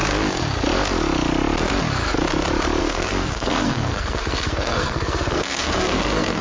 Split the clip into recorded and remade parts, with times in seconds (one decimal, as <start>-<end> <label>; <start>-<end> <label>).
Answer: 0.0-2.8 recorded; 2.8-6.4 remade